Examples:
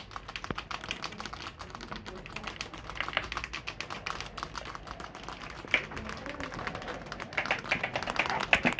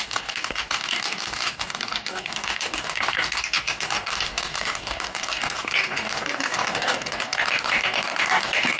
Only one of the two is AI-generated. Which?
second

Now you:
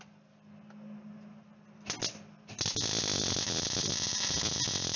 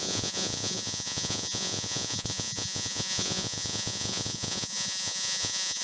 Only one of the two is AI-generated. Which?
second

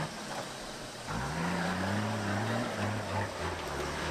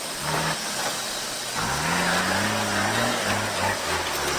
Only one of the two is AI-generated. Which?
first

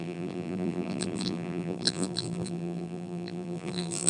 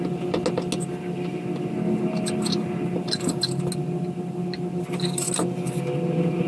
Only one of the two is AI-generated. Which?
first